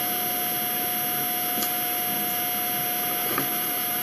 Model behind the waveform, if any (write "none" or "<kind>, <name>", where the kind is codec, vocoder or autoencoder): none